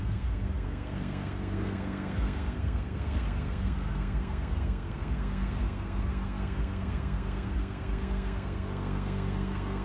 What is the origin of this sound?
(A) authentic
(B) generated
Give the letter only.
B